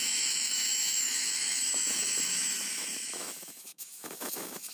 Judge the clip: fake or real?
fake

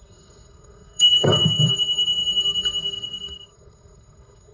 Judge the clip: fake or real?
fake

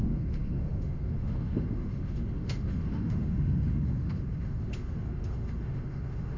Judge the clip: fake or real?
fake